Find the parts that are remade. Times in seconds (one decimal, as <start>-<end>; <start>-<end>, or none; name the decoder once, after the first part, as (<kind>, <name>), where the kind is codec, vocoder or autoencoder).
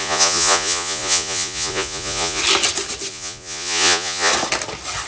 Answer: 0.0-2.4 (vocoder, Vocos); 3.1-4.3